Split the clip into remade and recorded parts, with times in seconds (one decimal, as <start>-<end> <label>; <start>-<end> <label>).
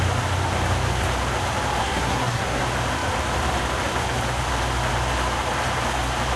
0.0-1.8 recorded; 1.8-2.6 remade; 2.6-6.4 recorded